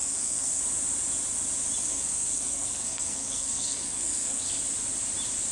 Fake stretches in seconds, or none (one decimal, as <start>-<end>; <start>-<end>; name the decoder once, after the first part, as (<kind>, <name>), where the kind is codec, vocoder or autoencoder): 0.0-0.6 (codec, SNAC); 1.8-4.5

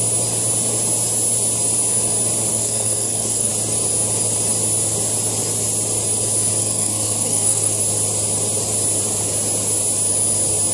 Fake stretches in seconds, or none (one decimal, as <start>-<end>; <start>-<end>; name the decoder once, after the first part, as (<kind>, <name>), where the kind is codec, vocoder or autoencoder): 2.5-3.5 (codec, SNAC); 6.6-7.8